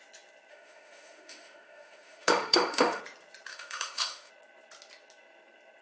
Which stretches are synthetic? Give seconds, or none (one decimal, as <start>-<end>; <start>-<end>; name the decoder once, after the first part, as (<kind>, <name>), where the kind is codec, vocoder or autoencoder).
0.5-3.0 (autoencoder, DAC-VAE); 3.5-4.3